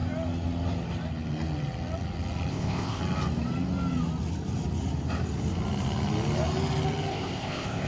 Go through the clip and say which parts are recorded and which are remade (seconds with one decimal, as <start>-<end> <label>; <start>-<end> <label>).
0.0-2.5 recorded; 2.5-3.0 remade; 3.0-7.1 recorded; 7.1-7.9 remade